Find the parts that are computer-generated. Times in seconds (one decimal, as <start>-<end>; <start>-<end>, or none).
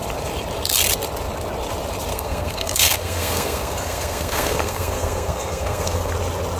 2.1-6.1